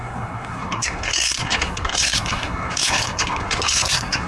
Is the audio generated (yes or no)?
yes